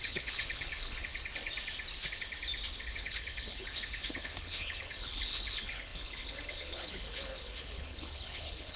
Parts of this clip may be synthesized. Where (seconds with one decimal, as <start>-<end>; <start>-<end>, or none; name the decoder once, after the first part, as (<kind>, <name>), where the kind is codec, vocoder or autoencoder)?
0.0-1.1 (codec, HILCodec); 2.8-8.8